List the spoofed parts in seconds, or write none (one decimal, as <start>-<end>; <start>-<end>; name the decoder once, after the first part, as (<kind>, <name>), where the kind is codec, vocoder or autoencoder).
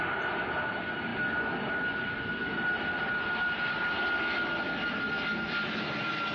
none